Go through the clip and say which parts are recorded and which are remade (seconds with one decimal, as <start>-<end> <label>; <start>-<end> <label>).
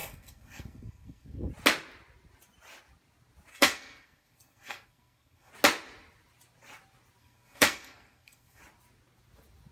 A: 0.0-1.5 remade; 1.5-3.5 recorded; 3.5-5.5 remade; 5.5-7.2 recorded; 7.2-8.6 remade; 8.6-9.7 recorded